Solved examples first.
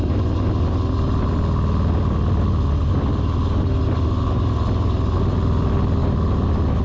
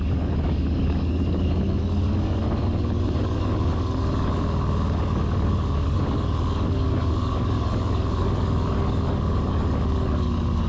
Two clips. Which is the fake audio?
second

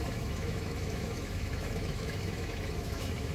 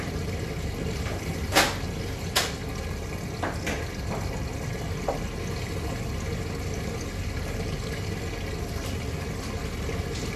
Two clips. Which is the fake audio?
first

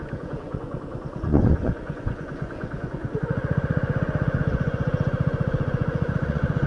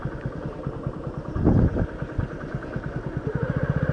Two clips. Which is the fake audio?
first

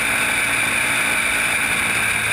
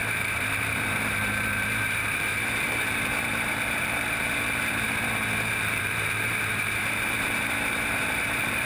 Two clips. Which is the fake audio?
second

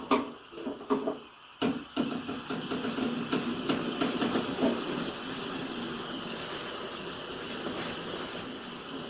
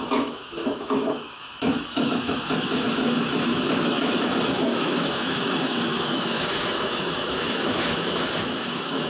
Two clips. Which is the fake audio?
second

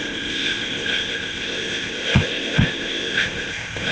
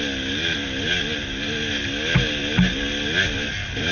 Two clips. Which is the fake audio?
first